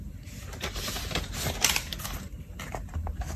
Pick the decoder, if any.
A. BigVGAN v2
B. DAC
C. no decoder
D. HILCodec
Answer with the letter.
A